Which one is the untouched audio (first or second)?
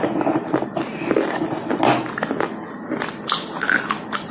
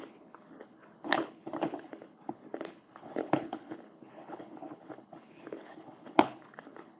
first